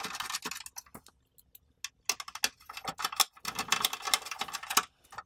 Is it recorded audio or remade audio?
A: recorded